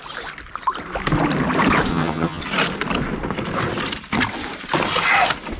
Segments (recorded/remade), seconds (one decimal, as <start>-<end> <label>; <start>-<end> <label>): 0.0-1.9 recorded; 1.9-2.4 remade; 2.4-5.6 recorded